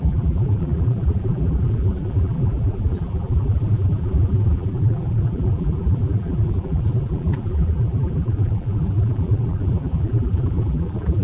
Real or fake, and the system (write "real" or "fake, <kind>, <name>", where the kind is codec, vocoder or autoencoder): fake, vocoder, BigVGAN v2